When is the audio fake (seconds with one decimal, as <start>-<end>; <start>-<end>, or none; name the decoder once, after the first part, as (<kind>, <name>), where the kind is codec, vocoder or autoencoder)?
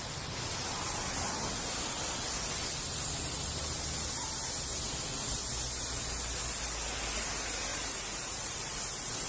7.7-8.8 (vocoder, BigVGAN v2)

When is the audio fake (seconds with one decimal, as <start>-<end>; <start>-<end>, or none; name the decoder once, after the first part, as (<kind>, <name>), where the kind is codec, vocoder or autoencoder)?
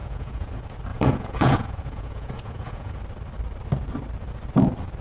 0.0-0.5 (vocoder, Vocos); 0.9-3.0